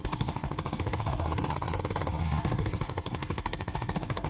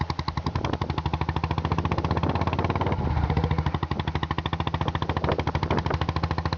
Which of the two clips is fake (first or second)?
first